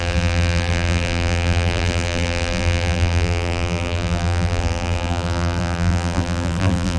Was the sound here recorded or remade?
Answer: remade